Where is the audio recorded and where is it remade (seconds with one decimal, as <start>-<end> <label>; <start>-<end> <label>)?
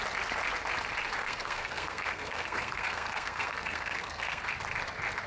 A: 0.0-1.2 recorded; 1.2-4.4 remade; 4.4-5.3 recorded